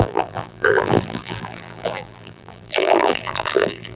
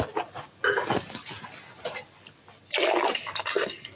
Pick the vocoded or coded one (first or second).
first